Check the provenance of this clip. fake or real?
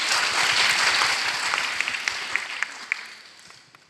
real